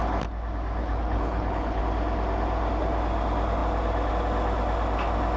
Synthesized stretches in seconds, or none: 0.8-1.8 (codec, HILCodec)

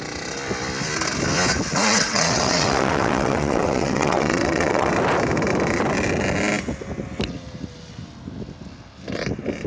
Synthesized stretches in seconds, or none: 1.7-4.9 (vocoder, WaveNeXt)

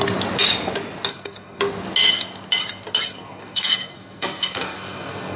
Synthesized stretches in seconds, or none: 1.1-1.6 (codec, SNAC); 3.1-5.4

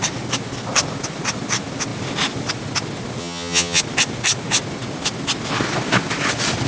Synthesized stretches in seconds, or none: 3.2-3.8 (vocoder, HiFi-GAN)

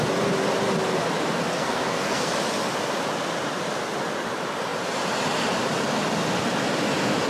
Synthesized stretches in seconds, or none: 1.5-2.3 (codec, SNAC)

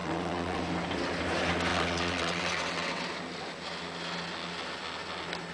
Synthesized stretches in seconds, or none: 0.0-0.6 (vocoder, WaveNeXt); 1.7-3.0

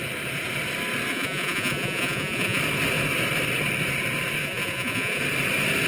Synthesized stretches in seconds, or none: 1.1-2.6 (vocoder, Vocos); 4.4-5.2